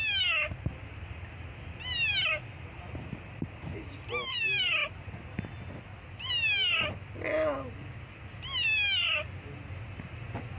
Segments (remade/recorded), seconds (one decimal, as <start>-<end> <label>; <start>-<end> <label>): 0.0-10.6 recorded